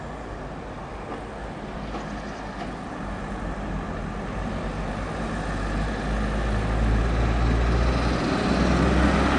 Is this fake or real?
real